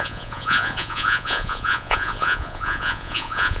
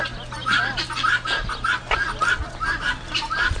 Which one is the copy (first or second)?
first